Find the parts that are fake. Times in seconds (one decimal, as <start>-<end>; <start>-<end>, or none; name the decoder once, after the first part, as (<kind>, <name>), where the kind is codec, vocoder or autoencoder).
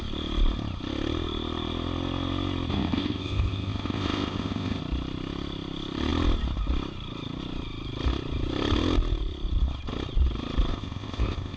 2.7-4.8 (codec, ZipCodec); 10.7-11.6